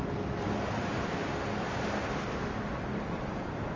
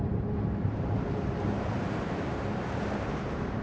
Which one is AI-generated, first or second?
second